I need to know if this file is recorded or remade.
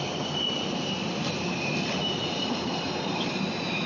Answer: remade